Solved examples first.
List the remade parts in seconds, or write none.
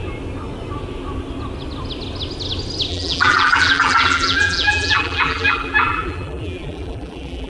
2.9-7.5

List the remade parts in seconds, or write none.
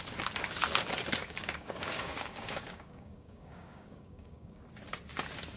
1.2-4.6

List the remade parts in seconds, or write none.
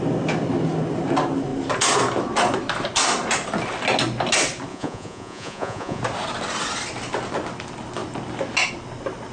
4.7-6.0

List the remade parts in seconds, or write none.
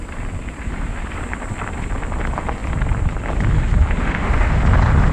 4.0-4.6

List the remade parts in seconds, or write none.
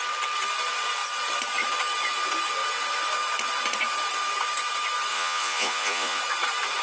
5.1-6.2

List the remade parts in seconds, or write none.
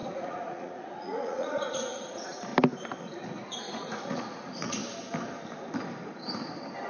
0.0-2.5; 3.0-4.8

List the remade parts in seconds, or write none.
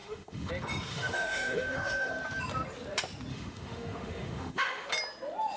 0.0-0.5; 0.9-2.1; 3.3-4.9